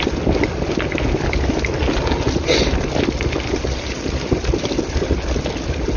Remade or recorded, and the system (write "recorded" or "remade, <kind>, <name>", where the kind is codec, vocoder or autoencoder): recorded